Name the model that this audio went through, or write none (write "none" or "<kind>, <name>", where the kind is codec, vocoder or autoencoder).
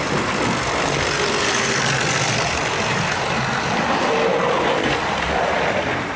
none